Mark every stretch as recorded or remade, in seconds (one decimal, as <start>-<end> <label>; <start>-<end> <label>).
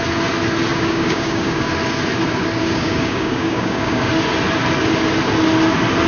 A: 0.0-0.7 recorded; 0.7-1.7 remade; 1.7-2.6 recorded; 2.6-4.1 remade; 4.1-6.1 recorded